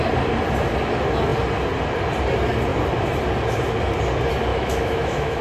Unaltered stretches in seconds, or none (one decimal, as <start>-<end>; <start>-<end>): 0.0-4.5